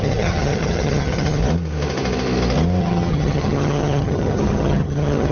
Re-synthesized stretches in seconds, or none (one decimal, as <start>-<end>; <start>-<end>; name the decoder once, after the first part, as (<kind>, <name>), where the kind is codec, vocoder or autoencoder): 0.0-1.4 (vocoder, HiFi-GAN); 2.8-5.3